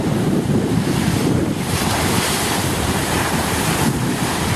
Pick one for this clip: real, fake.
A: fake